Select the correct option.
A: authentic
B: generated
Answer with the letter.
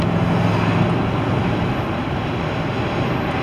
A